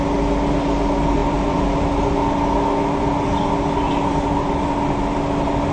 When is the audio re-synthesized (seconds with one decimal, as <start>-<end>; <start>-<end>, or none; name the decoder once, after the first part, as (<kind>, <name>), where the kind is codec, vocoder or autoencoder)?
none